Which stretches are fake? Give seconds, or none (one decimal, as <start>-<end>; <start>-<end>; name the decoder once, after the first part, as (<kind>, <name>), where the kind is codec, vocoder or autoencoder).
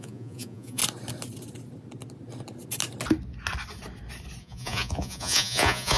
0.0-0.8 (vocoder, Vocos); 4.4-6.0